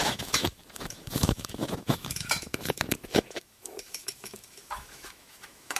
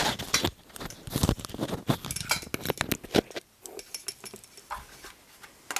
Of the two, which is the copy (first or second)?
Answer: first